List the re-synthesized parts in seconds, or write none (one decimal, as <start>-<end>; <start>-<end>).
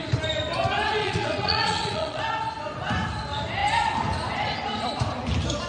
1.0-2.2